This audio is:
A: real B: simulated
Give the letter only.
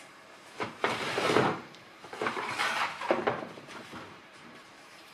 B